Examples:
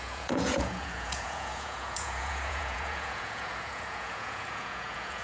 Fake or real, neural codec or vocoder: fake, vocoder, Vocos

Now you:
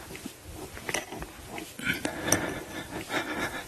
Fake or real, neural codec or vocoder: real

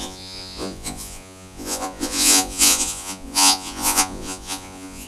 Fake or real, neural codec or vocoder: fake, vocoder, Vocos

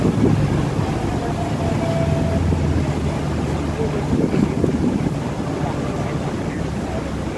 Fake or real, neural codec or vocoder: real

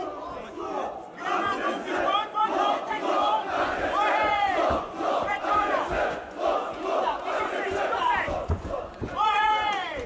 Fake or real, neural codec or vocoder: fake, vocoder, Vocos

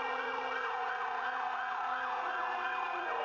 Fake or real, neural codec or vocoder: fake, vocoder, Vocos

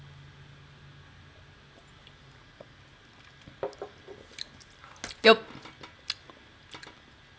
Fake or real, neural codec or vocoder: real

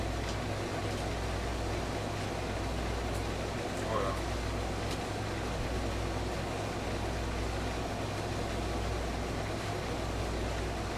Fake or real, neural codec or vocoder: real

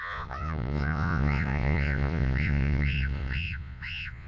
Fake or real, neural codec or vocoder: fake, vocoder, Vocos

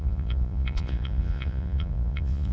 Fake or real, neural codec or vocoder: fake, vocoder, Vocos